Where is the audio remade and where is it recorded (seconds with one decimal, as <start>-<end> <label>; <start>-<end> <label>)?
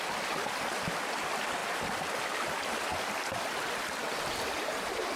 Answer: 0.0-5.2 recorded